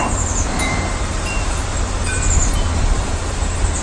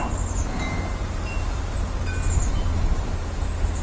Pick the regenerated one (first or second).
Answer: first